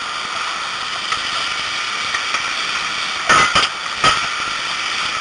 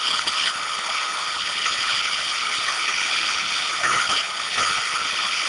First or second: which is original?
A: first